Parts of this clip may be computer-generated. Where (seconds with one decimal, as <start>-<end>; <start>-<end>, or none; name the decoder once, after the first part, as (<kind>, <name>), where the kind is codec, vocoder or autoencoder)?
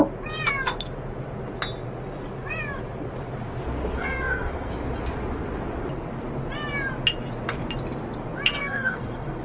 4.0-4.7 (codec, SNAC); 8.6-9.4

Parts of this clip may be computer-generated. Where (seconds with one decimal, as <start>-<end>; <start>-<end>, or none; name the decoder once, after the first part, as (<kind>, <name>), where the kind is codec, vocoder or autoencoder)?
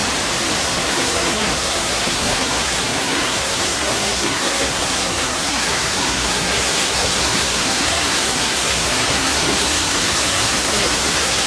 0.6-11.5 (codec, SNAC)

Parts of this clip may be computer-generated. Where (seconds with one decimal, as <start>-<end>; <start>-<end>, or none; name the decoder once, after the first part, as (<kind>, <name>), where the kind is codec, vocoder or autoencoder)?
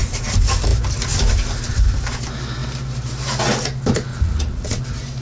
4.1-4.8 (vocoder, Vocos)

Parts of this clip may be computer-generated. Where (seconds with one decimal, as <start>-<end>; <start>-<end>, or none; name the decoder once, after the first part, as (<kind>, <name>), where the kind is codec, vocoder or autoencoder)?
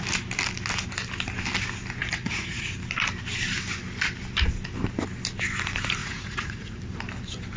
2.0-2.7 (vocoder, Vocos); 6.0-6.8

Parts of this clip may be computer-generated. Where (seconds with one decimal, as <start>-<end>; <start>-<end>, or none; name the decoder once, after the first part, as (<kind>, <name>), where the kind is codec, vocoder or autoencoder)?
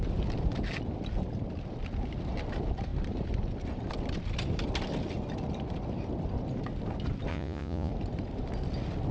7.3-7.9 (vocoder, Vocos)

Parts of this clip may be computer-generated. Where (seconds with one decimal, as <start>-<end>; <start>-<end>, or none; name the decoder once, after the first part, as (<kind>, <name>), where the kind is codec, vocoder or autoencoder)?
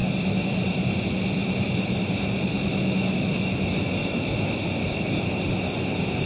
2.8-3.5 (autoencoder, DAC-VAE); 4.0-4.5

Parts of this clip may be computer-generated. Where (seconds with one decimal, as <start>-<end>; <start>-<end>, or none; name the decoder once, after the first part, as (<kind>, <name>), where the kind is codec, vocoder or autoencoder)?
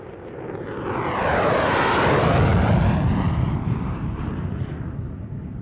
none